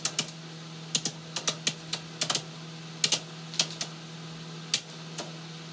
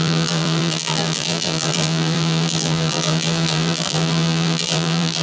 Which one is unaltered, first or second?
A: first